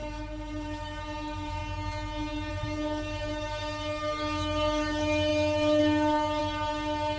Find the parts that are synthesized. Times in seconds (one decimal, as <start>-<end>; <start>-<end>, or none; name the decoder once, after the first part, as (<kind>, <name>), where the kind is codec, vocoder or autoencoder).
0.0-1.6 (autoencoder, DAC-VAE); 2.5-6.4